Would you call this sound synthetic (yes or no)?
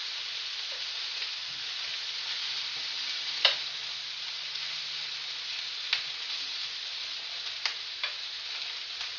no